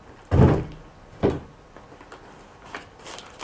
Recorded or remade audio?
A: recorded